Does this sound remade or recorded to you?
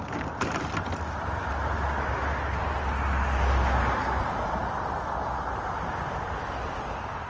recorded